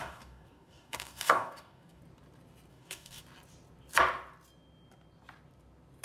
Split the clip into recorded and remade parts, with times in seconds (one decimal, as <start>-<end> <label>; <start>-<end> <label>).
0.0-2.0 remade; 2.0-2.7 recorded; 2.7-3.2 remade; 3.2-6.0 recorded